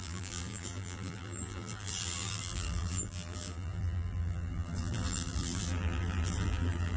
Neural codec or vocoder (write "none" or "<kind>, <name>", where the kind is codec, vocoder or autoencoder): vocoder, BigVGAN v2